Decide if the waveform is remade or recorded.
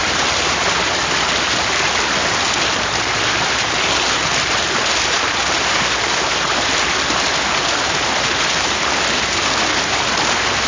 recorded